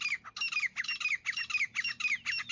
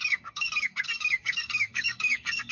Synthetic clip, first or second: second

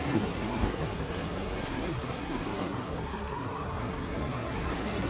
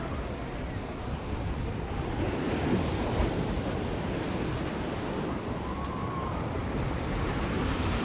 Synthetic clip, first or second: first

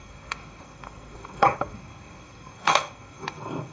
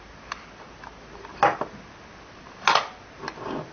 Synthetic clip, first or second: first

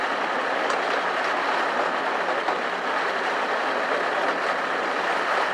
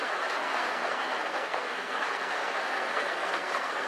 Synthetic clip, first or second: second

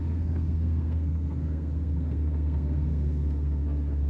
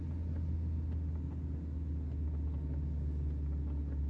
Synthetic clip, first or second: first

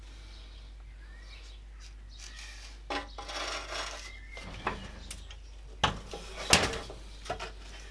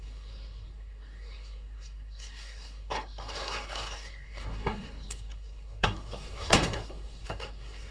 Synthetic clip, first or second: second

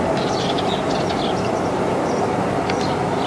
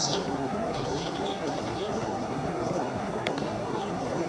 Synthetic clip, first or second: second